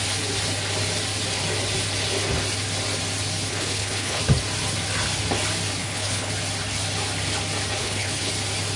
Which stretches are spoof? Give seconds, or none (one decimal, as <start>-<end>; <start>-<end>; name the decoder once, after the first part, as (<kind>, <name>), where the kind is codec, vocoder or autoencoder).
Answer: 3.5-4.2 (codec, HILCodec); 5.8-6.3; 7.8-8.3